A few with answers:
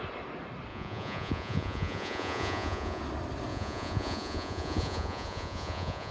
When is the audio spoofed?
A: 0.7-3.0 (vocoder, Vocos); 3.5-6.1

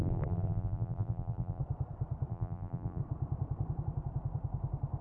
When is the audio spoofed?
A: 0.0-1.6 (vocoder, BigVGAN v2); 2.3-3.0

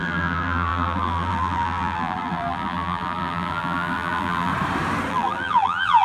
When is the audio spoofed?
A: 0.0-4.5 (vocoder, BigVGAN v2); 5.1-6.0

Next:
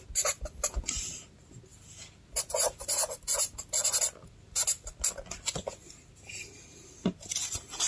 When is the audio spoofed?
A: none